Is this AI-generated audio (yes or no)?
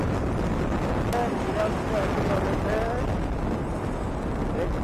no